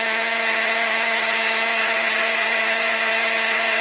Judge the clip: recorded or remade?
remade